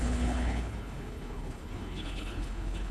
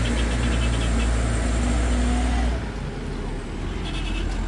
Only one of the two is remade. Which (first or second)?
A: first